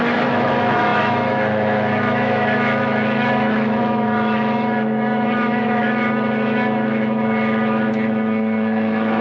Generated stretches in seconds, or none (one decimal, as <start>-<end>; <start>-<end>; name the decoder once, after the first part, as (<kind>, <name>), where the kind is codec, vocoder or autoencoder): 0.0-9.2 (autoencoder, DAC-VAE)